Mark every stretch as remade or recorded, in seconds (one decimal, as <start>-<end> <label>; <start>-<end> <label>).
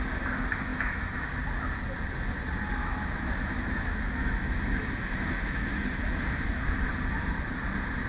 0.0-0.7 recorded; 0.7-1.4 remade; 1.4-2.8 recorded; 2.8-6.9 remade; 6.9-8.1 recorded